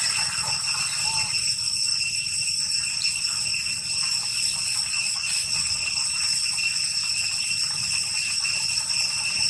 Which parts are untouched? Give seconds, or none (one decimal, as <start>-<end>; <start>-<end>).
0.0-4.3; 6.1-9.5